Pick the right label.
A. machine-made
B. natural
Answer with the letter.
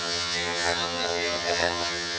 A